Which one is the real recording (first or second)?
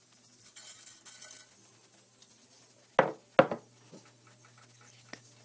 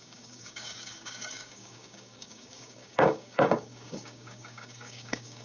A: first